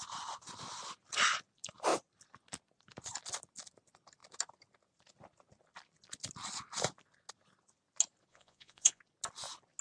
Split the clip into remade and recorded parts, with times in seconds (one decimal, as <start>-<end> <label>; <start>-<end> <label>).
0.0-8.3 recorded; 8.3-9.0 remade; 9.0-9.8 recorded